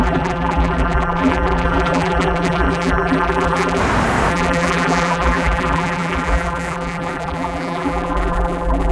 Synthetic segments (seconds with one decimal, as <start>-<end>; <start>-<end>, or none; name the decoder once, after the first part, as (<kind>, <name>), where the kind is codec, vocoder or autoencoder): 0.0-3.8 (vocoder, BigVGAN v2); 4.3-8.9